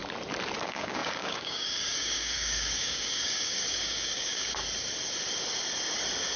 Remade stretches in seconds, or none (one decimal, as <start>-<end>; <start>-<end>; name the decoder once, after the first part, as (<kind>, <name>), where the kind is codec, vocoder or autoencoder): 0.6-4.6 (codec, DAC)